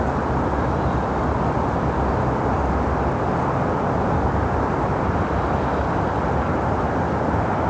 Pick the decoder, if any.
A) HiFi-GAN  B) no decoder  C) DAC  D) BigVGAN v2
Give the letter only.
B